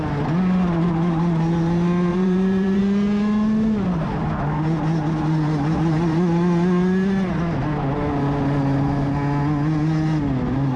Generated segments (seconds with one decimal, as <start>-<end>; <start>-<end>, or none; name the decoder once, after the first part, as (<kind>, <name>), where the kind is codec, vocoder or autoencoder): 2.1-2.8 (vocoder, BigVGAN v2)